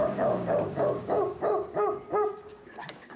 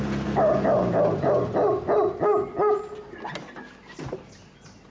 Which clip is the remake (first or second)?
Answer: first